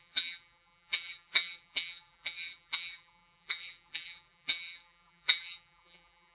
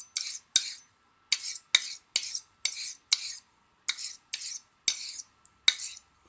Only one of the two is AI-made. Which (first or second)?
first